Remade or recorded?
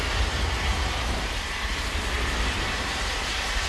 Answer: remade